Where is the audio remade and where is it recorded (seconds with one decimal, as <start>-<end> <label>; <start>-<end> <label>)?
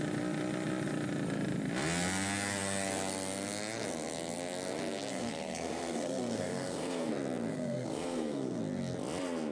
0.0-5.1 recorded; 5.1-7.1 remade; 7.1-7.5 recorded; 7.5-8.6 remade; 8.6-9.5 recorded